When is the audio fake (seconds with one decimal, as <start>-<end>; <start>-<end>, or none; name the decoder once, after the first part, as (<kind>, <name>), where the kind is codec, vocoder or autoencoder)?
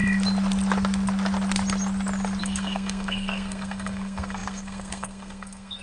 2.4-5.8 (codec, SNAC)